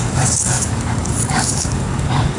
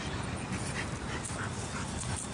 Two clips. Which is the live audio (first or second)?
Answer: second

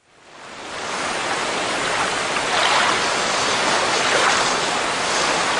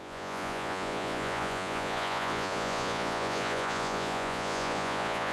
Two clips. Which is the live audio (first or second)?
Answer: first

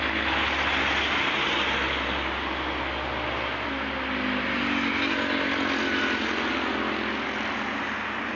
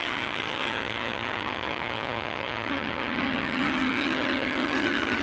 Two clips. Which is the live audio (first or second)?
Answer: first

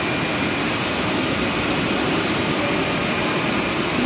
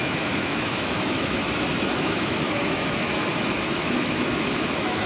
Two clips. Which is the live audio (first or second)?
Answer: first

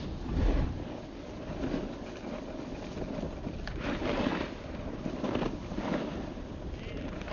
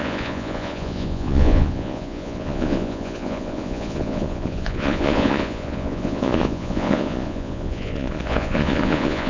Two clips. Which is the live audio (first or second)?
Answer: first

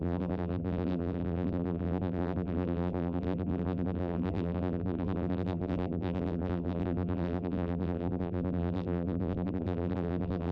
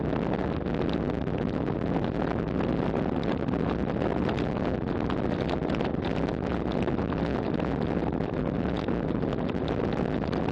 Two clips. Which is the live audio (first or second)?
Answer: second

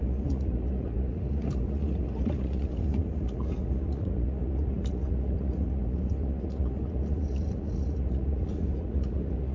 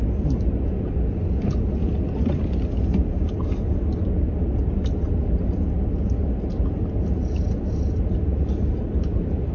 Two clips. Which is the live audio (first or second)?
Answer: second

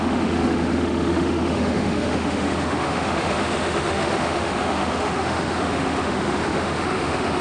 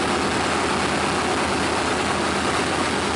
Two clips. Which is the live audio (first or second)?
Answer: second